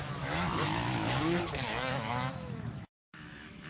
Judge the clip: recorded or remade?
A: remade